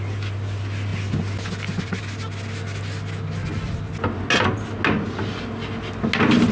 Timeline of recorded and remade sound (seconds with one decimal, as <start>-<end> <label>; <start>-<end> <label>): 0.0-6.5 recorded